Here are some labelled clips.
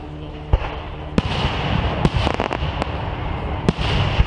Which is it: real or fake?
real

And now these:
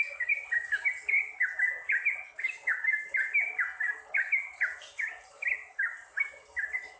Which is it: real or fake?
real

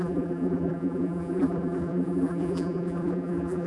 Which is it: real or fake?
fake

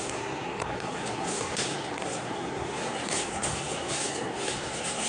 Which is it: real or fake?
fake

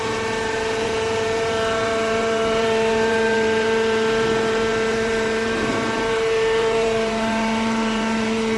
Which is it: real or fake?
fake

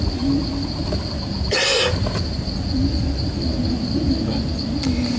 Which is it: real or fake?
real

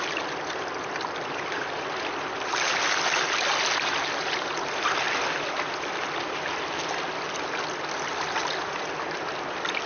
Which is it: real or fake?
real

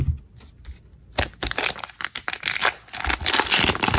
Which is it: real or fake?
real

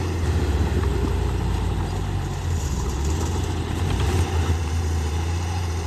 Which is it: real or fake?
fake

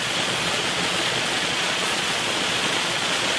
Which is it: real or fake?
fake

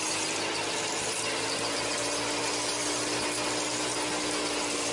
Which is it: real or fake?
real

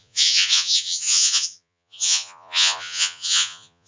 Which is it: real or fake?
fake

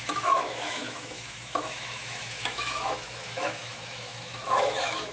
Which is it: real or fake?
fake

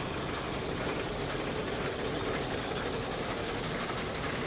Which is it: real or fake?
real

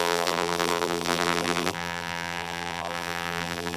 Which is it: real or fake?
fake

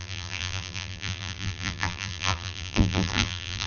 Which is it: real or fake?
fake